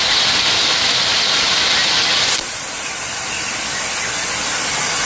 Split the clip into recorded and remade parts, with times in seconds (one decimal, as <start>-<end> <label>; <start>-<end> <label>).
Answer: 0.0-5.0 recorded